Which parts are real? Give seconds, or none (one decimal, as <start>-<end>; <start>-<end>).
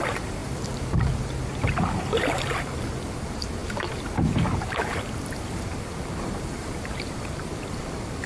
none